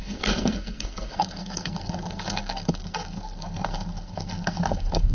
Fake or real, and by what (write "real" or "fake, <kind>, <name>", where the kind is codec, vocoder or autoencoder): fake, codec, SNAC